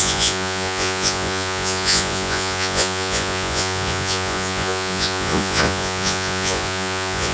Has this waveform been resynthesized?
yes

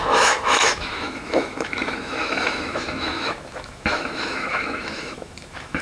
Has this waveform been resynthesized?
yes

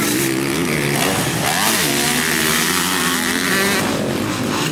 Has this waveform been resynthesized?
no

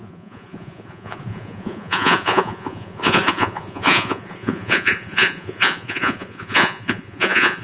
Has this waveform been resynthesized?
yes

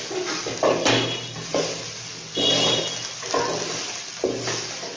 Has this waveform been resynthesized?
no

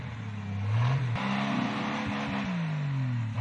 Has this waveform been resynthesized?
no